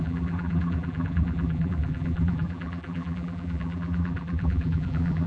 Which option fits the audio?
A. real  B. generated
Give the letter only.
B